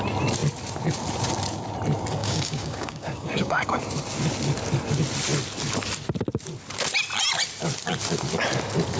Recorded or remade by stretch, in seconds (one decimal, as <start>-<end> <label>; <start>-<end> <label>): 0.0-2.2 recorded; 2.2-3.8 remade; 3.8-9.0 recorded